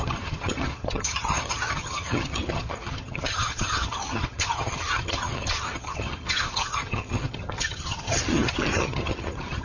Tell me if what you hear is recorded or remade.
remade